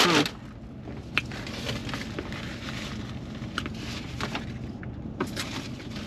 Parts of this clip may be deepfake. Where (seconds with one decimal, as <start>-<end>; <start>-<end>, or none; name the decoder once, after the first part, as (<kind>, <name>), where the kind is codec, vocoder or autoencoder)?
none

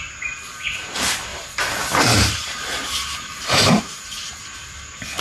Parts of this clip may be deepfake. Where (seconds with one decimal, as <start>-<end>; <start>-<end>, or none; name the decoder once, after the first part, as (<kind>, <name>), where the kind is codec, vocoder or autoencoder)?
1.3-4.4 (vocoder, BigVGAN v2)

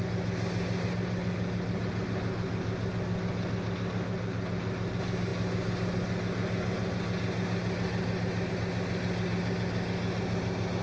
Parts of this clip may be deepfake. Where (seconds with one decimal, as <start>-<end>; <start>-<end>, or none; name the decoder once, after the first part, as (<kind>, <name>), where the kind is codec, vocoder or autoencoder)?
none

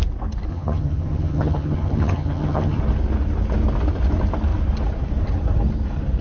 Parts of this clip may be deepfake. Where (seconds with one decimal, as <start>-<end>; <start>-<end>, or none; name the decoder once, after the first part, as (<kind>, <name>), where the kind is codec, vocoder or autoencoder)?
0.5-2.8 (vocoder, HiFi-GAN)

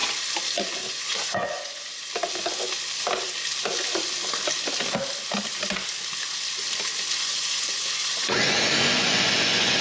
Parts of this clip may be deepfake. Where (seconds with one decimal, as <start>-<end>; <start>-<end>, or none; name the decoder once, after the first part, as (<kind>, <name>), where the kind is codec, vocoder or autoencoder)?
0.6-1.9 (vocoder, Vocos); 7.2-9.8